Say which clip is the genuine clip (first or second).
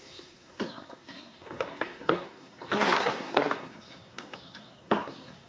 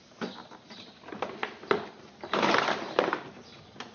second